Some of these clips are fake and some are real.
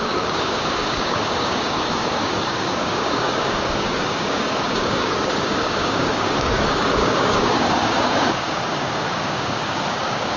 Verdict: fake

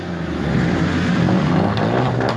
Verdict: real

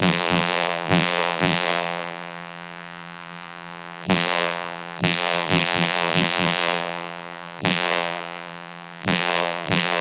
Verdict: fake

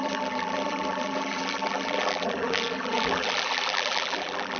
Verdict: fake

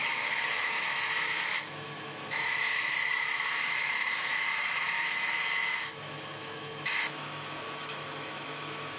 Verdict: fake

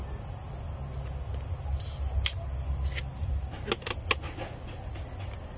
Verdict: real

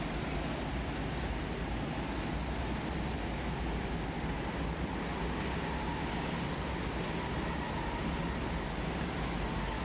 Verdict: real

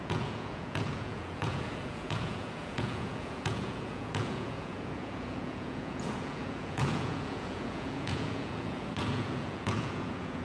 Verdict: fake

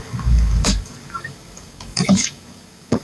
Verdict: fake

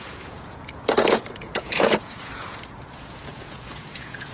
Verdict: fake